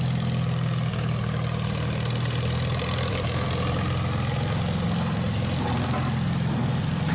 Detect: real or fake real